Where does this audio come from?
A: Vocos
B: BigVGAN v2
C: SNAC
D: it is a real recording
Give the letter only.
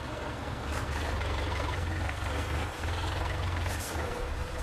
C